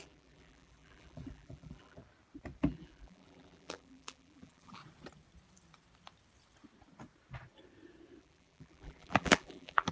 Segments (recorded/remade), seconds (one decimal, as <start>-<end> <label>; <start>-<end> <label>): 0.0-2.0 remade; 2.0-2.6 recorded; 2.6-4.8 remade; 4.8-8.2 recorded; 8.2-9.9 remade